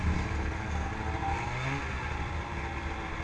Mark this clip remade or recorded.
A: recorded